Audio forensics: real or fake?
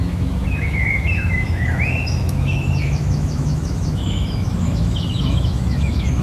fake